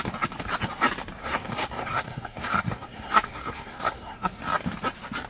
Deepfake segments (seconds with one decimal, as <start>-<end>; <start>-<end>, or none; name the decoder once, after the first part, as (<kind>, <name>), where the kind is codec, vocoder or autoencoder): 1.2-4.4 (codec, SNAC)